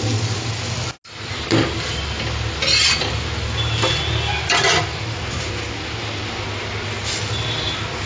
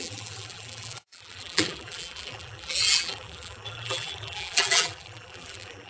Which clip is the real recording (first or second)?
first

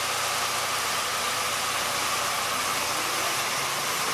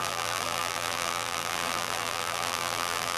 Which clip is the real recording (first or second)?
first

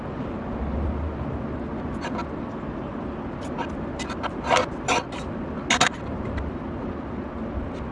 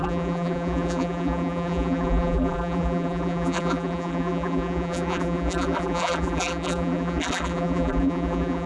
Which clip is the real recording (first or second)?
first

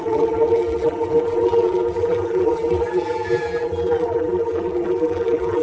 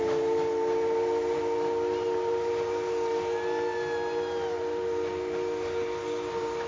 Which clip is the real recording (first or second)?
second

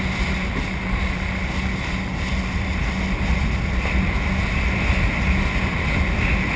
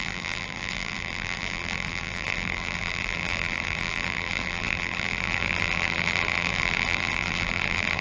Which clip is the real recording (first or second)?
first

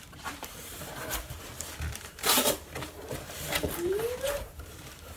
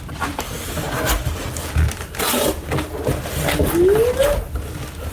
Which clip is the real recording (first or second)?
second